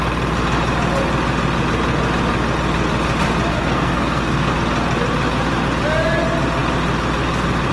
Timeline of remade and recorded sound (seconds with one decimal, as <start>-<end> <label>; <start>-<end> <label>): 0.0-3.5 recorded; 3.5-4.5 remade; 4.5-7.7 recorded